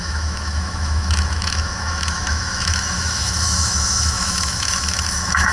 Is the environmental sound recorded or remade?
remade